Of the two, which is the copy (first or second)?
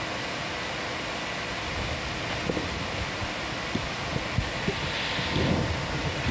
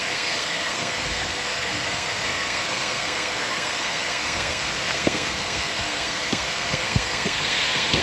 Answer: second